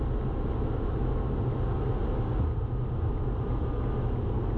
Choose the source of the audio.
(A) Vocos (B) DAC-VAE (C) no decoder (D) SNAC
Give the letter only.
C